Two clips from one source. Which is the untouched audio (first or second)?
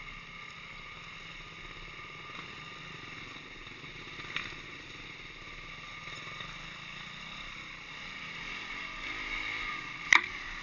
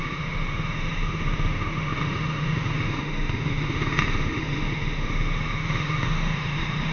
first